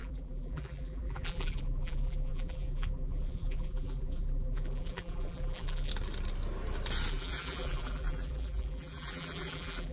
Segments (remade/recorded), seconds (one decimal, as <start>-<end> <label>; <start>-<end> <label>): 0.0-5.9 remade; 5.9-7.1 recorded; 7.1-9.9 remade